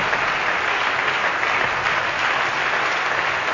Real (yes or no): yes